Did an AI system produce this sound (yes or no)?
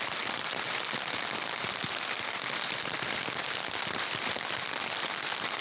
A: no